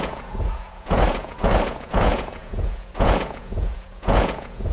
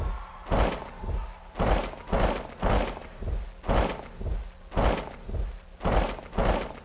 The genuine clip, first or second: second